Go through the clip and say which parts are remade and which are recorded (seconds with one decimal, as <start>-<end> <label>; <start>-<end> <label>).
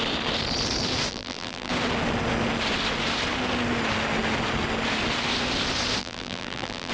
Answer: 0.0-1.1 recorded; 1.1-1.7 remade; 1.7-6.0 recorded; 6.0-6.9 remade